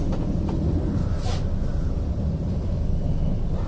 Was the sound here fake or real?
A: real